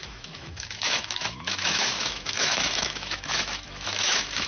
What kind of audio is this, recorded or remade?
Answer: remade